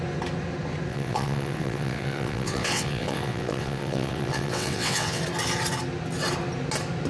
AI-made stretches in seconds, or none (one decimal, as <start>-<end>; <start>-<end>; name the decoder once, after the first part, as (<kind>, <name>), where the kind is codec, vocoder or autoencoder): 0.9-5.2 (vocoder, WaveNeXt)

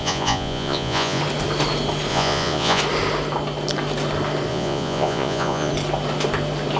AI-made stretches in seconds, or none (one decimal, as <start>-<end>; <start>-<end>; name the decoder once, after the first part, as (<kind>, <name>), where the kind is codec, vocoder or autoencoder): 0.0-1.2 (vocoder, Vocos); 2.1-2.8; 4.5-5.7

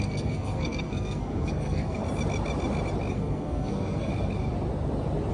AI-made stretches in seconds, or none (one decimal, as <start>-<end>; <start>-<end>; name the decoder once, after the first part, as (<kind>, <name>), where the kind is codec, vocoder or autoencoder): 0.0-2.0 (codec, SNAC); 3.1-4.1

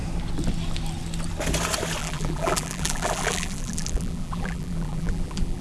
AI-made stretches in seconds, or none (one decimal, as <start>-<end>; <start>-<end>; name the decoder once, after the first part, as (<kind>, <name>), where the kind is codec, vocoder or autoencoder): 2.0-5.6 (vocoder, BigVGAN v2)

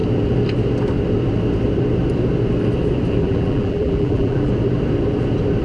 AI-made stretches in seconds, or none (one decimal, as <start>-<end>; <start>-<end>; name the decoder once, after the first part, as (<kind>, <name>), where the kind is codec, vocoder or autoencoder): 3.2-4.5 (vocoder, BigVGAN v2)

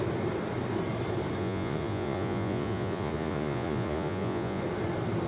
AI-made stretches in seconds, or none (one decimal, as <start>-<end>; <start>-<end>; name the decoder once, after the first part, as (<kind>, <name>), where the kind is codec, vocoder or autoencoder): 1.4-4.6 (vocoder, Vocos)

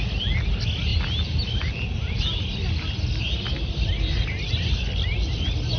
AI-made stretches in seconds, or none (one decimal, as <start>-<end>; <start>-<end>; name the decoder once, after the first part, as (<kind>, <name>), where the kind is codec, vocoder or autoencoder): none

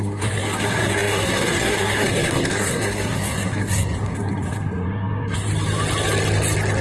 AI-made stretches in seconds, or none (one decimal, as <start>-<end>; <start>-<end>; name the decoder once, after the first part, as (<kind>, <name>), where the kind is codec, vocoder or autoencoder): 0.0-5.5 (codec, SNAC)